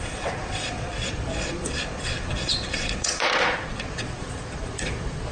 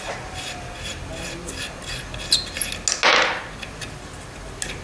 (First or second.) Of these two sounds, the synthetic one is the first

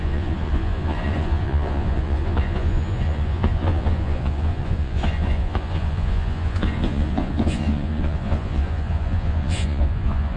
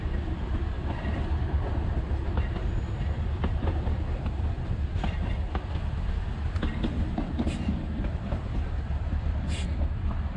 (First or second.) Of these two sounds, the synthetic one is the first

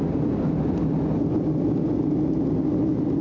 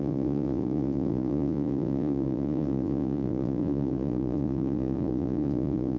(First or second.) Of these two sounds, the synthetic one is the second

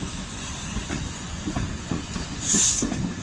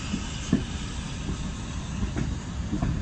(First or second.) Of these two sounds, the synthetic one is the first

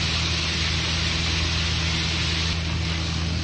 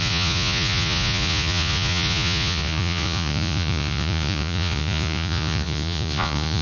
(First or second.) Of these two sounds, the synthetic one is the second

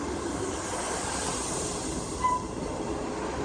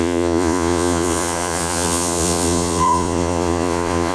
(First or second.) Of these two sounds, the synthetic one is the second